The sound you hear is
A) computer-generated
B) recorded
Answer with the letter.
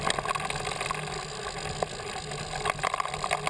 B